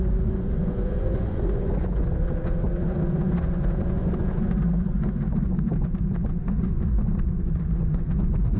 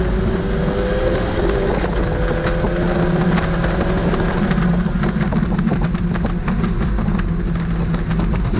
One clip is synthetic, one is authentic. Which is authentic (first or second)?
second